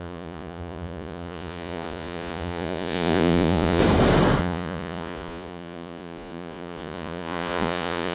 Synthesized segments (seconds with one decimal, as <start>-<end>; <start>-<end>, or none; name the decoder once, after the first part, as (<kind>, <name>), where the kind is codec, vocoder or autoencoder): 0.0-3.8 (vocoder, Vocos); 4.4-8.1

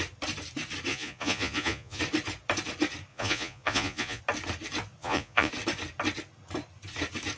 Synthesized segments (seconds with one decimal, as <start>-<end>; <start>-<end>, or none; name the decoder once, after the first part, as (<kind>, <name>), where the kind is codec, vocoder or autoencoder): 0.9-2.0 (vocoder, Vocos); 3.1-4.2; 5.0-5.5